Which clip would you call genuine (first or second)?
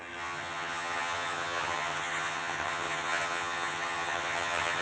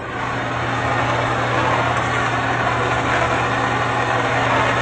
second